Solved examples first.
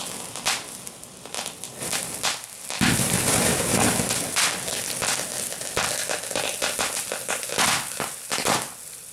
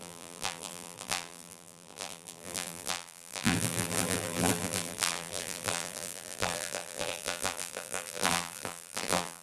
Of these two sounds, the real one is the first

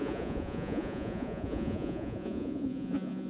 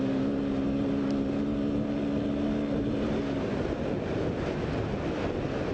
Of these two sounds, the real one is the second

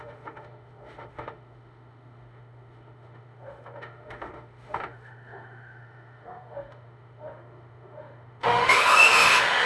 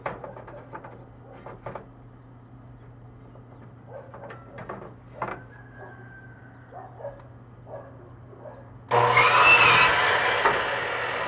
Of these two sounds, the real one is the second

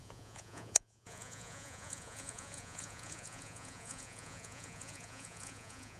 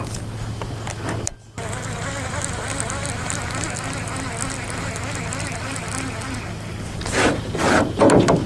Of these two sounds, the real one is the second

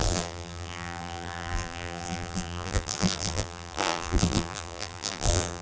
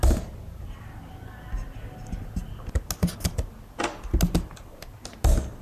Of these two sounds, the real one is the second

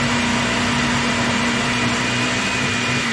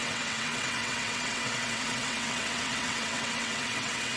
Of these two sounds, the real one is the first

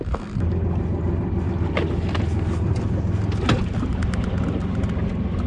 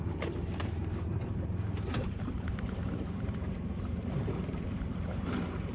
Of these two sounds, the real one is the first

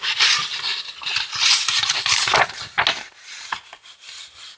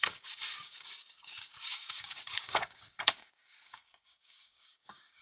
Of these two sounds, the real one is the first